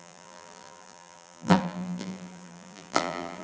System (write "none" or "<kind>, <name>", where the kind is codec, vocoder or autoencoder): vocoder, BigVGAN v2